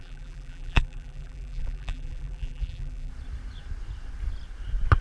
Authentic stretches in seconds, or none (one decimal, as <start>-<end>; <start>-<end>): 3.1-5.0